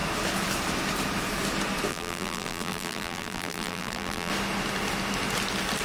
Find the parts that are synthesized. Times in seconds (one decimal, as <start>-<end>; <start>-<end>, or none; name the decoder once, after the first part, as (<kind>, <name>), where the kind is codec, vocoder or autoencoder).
1.9-4.3 (vocoder, BigVGAN v2)